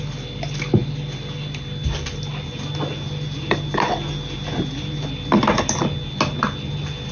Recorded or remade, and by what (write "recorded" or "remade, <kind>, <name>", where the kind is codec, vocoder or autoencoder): recorded